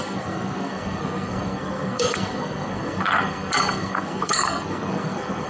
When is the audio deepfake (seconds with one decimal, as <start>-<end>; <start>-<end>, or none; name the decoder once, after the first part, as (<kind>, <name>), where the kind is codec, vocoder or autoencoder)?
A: 0.0-5.5 (codec, SNAC)